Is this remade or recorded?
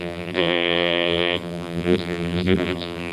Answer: remade